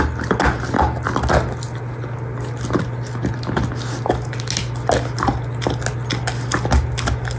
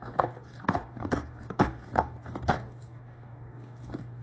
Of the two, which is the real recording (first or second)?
first